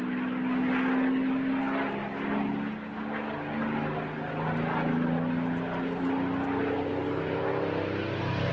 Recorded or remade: recorded